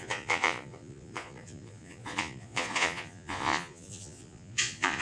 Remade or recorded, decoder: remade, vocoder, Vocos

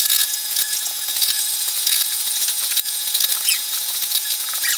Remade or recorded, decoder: remade, vocoder, Vocos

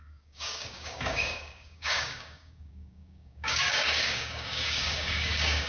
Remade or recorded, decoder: remade, codec, DAC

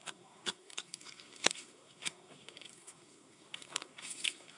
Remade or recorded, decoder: remade, codec, SNAC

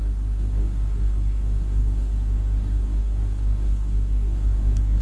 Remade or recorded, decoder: remade, codec, DAC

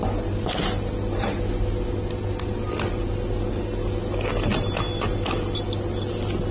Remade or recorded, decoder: recorded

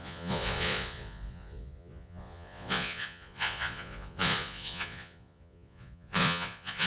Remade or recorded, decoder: remade, vocoder, Vocos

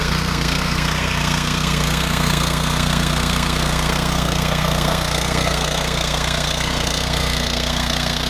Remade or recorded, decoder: remade, codec, SNAC